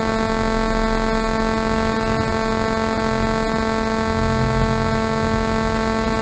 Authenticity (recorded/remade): recorded